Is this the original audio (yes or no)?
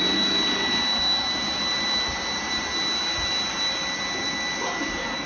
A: yes